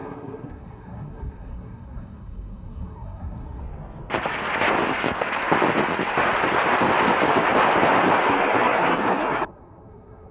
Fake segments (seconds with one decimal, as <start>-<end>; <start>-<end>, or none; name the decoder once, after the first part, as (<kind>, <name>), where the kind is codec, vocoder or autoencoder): 0.0-3.6 (codec, SNAC); 8.3-10.3